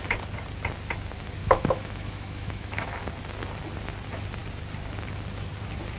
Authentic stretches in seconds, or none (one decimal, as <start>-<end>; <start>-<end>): 0.0-1.4; 3.0-6.0